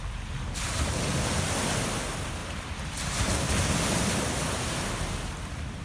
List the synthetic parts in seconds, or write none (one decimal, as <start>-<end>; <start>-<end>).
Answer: none